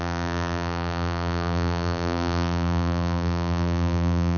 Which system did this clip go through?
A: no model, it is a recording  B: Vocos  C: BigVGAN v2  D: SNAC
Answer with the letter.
C